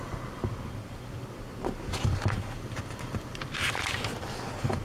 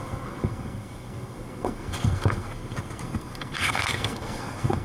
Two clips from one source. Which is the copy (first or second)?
second